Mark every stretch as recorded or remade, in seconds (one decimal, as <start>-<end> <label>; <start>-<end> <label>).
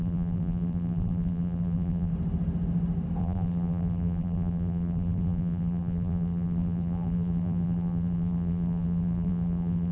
0.0-2.1 remade; 2.1-3.2 recorded; 3.2-9.9 remade